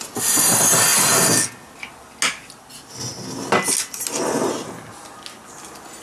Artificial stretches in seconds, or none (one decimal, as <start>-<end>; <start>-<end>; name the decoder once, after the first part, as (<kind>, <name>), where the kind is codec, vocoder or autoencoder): none